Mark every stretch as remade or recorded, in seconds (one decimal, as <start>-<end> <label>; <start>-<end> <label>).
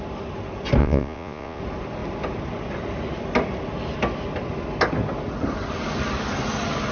0.0-0.8 recorded; 0.8-1.6 remade; 1.6-6.9 recorded